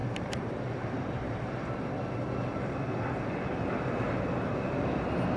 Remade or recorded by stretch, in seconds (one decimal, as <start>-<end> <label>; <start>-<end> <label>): 0.0-1.8 remade; 1.8-2.5 recorded; 2.5-3.3 remade; 3.3-5.4 recorded

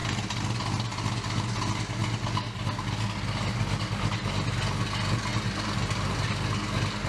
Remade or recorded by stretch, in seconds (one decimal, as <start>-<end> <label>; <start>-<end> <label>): 0.0-5.3 recorded; 5.3-6.3 remade; 6.3-7.1 recorded

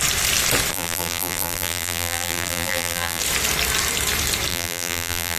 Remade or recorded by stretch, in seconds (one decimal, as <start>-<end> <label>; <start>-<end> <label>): 0.0-0.7 recorded; 0.7-3.2 remade; 3.2-4.5 recorded; 4.5-5.4 remade

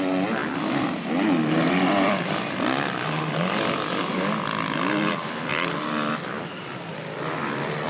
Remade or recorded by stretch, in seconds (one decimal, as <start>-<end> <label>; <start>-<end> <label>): 0.0-0.4 recorded; 0.4-4.1 remade; 4.1-5.5 recorded; 5.5-6.1 remade; 6.1-7.9 recorded